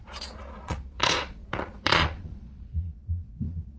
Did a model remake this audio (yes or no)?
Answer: yes